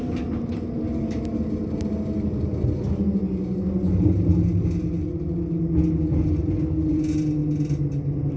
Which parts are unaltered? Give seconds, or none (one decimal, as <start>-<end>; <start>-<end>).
0.0-8.4